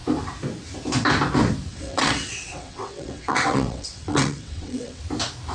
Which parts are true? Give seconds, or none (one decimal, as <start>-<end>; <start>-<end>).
0.0-1.7; 5.0-5.5